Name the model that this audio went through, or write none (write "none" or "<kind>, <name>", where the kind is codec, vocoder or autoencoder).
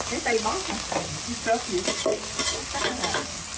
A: none